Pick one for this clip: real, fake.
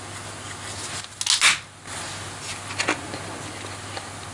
real